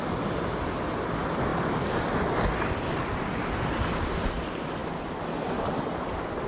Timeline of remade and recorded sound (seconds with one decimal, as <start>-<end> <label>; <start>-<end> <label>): 0.0-1.5 remade; 1.5-2.7 recorded; 2.7-4.8 remade; 4.8-5.5 recorded; 5.5-6.5 remade